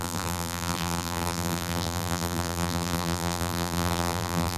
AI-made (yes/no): yes